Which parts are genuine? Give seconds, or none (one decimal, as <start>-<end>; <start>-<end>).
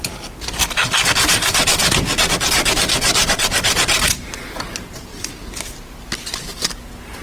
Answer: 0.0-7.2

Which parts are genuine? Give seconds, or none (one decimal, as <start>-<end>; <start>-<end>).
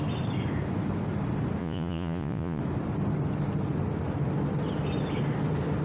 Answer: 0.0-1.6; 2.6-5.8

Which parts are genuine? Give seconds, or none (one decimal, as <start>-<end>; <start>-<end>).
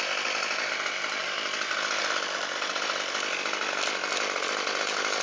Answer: 0.0-5.2